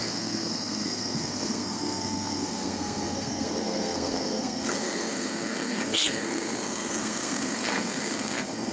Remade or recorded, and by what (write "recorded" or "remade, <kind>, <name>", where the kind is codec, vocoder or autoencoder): remade, codec, SNAC